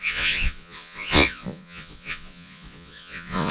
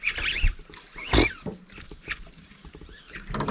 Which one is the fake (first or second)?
first